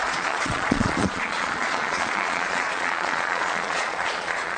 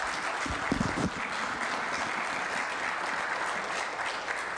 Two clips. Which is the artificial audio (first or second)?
first